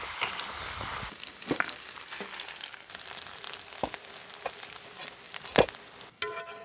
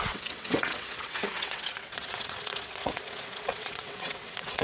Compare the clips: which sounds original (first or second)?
first